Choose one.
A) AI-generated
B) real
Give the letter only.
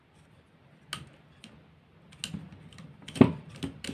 B